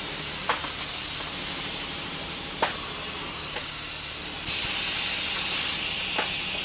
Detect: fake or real real